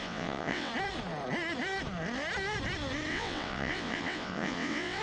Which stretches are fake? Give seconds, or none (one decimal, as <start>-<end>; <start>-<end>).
0.0-0.7; 3.1-5.0